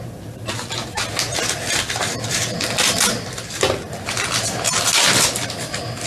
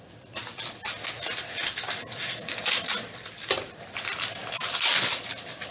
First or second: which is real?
first